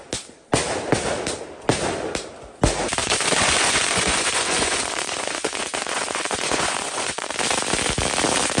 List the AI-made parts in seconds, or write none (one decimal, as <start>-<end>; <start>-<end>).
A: 3.0-7.3